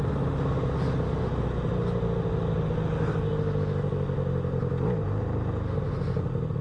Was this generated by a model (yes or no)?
no